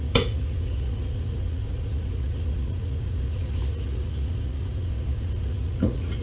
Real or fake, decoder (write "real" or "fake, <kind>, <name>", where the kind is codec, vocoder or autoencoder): fake, vocoder, Vocos